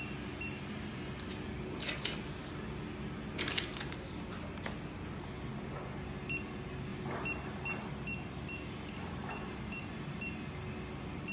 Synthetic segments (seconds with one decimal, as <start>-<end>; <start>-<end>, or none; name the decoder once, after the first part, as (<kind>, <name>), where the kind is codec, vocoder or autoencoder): none